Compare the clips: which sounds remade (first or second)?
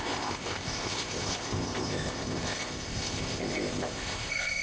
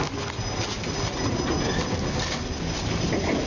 first